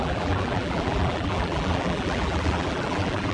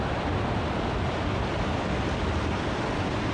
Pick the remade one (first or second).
first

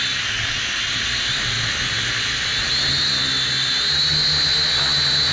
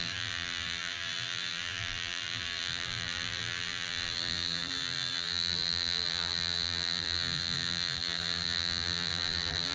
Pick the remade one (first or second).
second